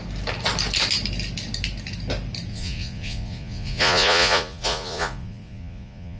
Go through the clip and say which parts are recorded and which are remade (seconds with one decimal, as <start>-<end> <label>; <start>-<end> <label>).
0.0-2.5 recorded; 2.5-6.2 remade